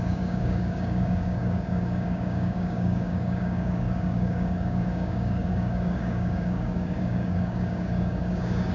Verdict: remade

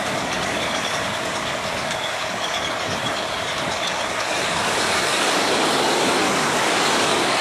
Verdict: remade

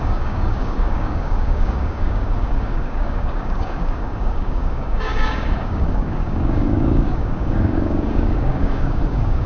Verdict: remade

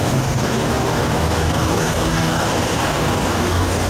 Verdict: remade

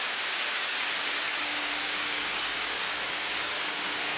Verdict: remade